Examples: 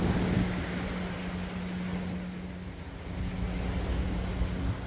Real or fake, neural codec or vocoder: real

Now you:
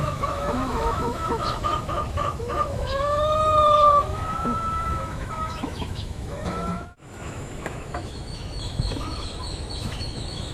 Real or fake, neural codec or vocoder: fake, autoencoder, DAC-VAE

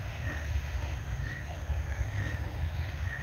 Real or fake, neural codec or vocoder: fake, autoencoder, DAC-VAE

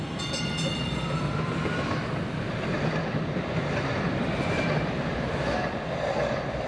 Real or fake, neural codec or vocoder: real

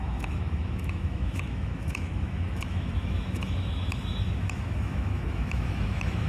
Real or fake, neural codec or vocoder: fake, autoencoder, DAC-VAE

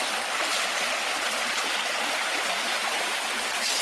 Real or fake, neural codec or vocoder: real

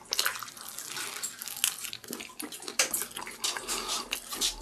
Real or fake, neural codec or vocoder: real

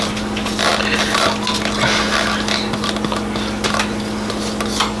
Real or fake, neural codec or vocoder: real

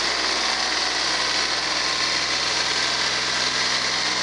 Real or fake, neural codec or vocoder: real